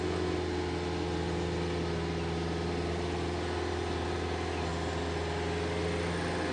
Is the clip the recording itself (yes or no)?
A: yes